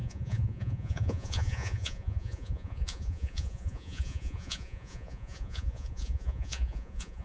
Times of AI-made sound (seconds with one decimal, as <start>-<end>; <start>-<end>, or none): 0.0-7.2